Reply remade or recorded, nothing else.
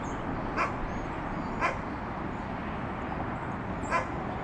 recorded